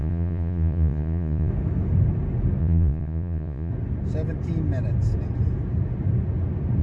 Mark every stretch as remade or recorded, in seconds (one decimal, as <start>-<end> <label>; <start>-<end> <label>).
0.0-1.5 remade; 1.5-2.6 recorded; 2.6-3.7 remade; 3.7-6.8 recorded